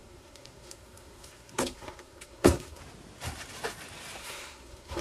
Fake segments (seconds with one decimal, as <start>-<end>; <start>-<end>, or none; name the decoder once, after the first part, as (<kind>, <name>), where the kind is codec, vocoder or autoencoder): 0.0-2.8 (codec, SNAC); 4.2-5.0